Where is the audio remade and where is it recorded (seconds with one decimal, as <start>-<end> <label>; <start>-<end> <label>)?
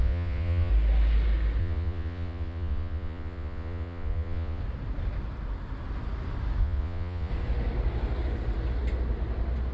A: 0.0-0.7 remade; 0.7-1.6 recorded; 1.6-4.6 remade; 4.6-6.6 recorded; 6.6-7.3 remade; 7.3-9.7 recorded